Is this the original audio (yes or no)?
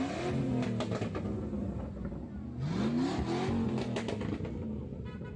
yes